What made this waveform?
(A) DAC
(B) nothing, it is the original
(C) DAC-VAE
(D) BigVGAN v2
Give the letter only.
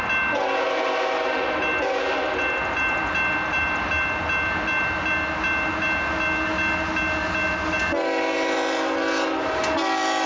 B